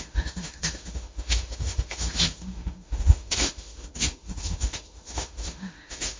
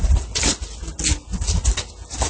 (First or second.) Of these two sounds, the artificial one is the first